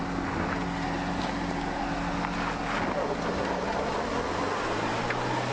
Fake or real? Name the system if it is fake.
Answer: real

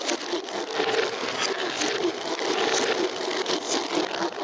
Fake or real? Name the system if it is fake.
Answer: real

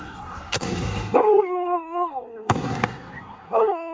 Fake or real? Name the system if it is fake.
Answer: fake, codec, SNAC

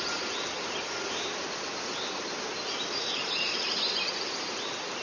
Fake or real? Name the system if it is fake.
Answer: real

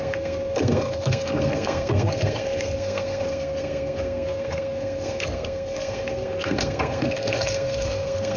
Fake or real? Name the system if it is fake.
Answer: fake, codec, SNAC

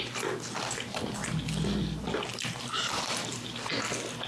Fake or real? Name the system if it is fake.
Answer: real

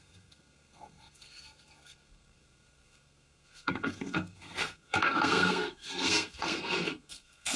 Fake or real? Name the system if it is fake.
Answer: fake, codec, SNAC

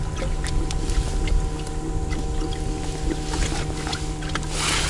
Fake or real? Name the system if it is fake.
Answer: real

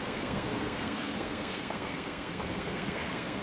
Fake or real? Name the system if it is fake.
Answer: fake, codec, SNAC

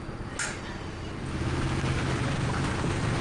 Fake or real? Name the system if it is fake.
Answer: real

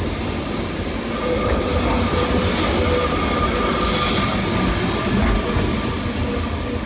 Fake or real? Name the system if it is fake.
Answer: real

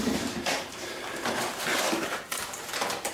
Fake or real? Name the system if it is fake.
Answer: real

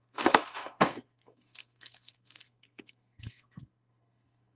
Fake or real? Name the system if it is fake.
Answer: fake, codec, SNAC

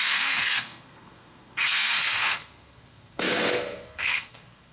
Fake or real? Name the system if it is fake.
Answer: fake, codec, SNAC